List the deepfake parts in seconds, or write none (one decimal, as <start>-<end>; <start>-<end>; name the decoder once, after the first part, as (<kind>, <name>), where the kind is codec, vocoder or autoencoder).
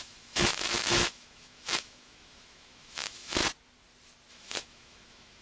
0.0-3.4 (autoencoder, DAC-VAE); 4.3-5.4